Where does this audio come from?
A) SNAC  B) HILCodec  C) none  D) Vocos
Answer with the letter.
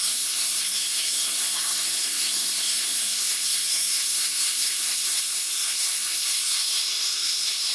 A